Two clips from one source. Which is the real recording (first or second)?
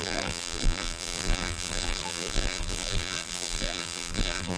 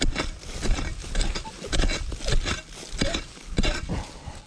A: second